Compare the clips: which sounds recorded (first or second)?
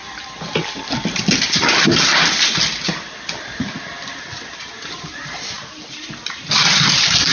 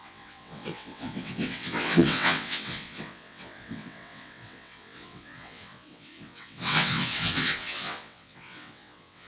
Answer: first